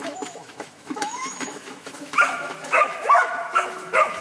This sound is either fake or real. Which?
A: fake